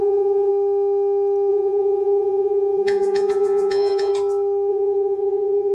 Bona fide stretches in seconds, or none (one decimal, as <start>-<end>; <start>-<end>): 0.5-1.5; 4.1-4.7